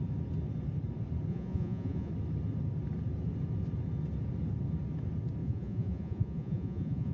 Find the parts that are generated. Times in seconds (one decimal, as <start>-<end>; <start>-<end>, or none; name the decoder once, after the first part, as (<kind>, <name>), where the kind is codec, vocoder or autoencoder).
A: 1.3-2.1 (vocoder, Vocos); 5.4-7.1